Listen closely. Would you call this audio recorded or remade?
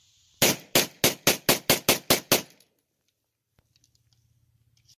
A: recorded